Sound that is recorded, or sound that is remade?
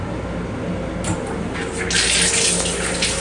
recorded